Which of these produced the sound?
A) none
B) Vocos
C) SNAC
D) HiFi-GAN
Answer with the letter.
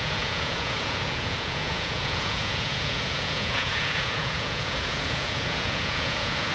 B